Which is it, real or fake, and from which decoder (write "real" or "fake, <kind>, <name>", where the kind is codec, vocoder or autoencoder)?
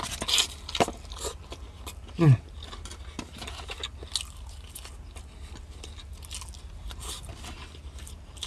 real